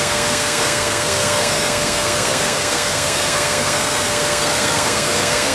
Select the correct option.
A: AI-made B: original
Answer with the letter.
A